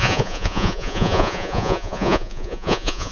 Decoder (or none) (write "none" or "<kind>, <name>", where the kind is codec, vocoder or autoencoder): vocoder, Vocos